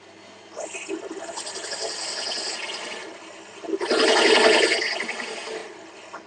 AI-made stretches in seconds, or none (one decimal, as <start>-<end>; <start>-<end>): none